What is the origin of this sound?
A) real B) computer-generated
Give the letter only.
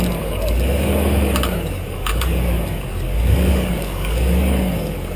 B